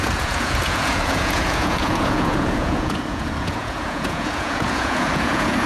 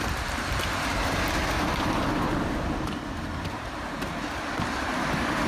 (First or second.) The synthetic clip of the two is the first